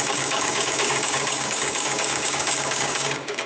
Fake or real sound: fake